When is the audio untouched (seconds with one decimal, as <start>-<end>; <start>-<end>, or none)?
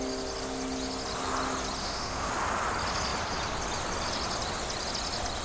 0.0-1.8; 2.3-5.4